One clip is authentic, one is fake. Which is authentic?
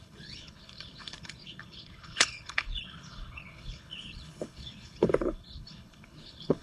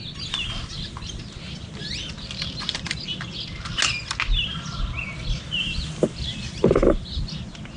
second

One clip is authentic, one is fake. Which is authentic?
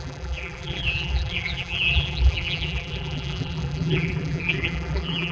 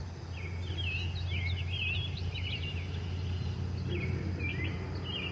second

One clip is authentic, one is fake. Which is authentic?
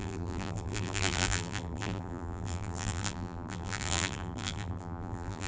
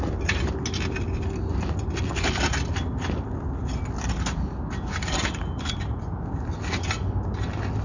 second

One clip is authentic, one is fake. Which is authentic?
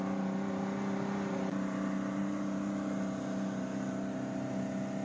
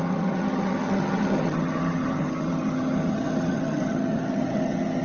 first